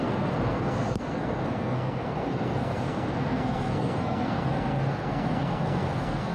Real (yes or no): no